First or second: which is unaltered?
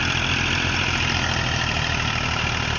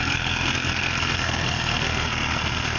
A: first